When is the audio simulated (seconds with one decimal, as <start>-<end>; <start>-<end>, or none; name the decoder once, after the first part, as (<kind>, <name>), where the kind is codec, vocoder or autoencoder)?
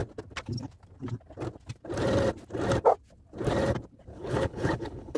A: 4.1-5.2 (codec, HILCodec)